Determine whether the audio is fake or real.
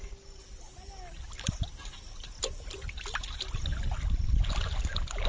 real